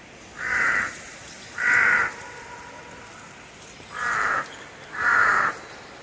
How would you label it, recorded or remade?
recorded